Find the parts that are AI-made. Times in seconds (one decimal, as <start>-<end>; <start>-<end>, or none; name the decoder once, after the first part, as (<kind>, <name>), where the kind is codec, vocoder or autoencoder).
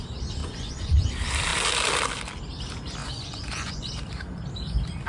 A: 0.4-1.1 (vocoder, Vocos); 3.0-3.9